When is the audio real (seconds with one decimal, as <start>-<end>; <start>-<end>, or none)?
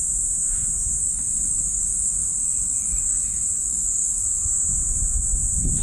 0.0-1.0; 4.5-5.8